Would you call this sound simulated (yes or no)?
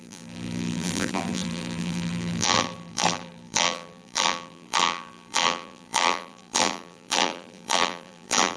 yes